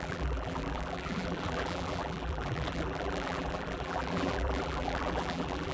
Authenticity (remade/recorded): remade